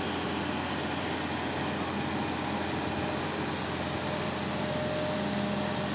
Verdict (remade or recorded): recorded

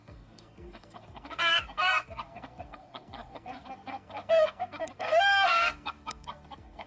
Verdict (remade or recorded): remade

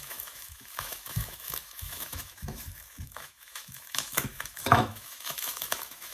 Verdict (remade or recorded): remade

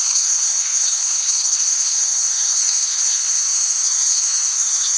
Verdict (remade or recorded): remade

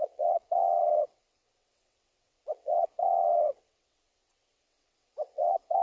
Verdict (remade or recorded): remade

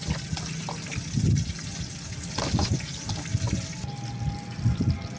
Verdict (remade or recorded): recorded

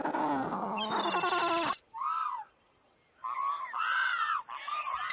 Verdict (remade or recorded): recorded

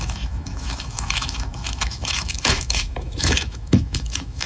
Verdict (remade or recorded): remade